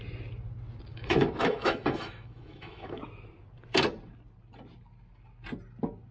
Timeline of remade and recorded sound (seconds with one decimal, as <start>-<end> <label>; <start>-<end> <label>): 0.0-0.9 recorded; 0.9-3.0 remade; 3.0-6.1 recorded